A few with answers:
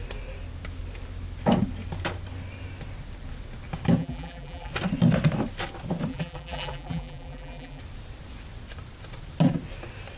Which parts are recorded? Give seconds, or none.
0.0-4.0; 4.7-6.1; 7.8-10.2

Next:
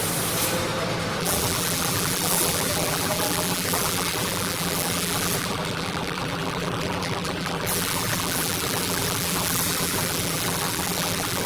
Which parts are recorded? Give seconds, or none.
0.0-1.2

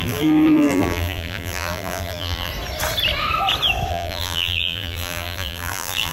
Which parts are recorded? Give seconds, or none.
2.5-3.9

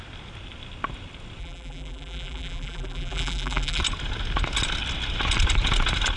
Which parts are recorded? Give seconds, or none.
0.0-1.4; 3.8-6.2

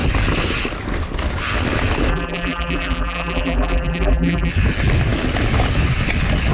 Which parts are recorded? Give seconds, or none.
0.0-2.1; 4.5-6.5

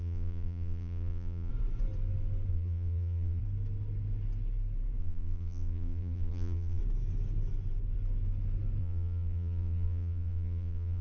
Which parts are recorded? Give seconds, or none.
1.5-2.5; 3.4-5.0; 6.8-8.8

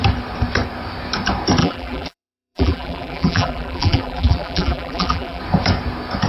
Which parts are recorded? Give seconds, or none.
0.0-1.6; 5.4-6.3